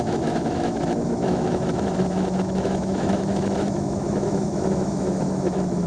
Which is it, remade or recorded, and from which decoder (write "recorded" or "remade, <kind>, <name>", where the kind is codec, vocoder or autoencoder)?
remade, autoencoder, DAC-VAE